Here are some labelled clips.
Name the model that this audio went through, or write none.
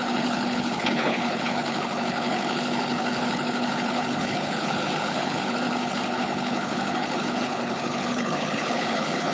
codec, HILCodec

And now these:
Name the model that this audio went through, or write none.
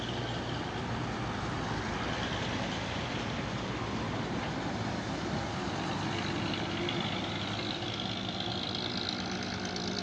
none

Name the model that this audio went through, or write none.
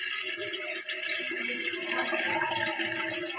none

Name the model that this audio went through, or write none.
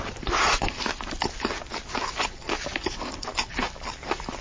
none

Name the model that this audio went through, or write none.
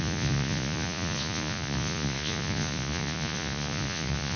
vocoder, Vocos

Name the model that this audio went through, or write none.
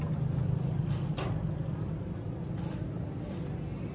none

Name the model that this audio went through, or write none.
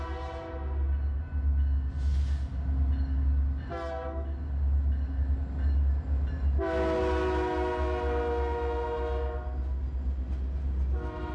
none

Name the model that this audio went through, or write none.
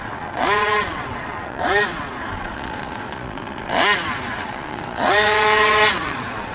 vocoder, Vocos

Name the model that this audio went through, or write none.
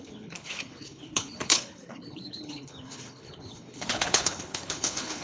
codec, HILCodec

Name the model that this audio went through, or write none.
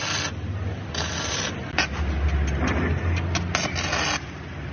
none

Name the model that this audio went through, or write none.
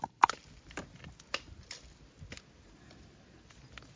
none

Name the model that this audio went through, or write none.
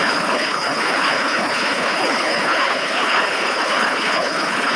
codec, HILCodec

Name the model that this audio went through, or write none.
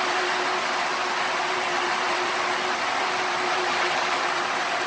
none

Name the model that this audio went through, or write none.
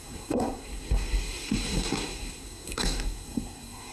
codec, SNAC